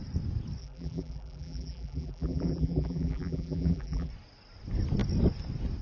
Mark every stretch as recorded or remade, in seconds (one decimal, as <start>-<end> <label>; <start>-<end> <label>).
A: 0.0-0.6 recorded; 0.6-4.1 remade; 4.1-5.8 recorded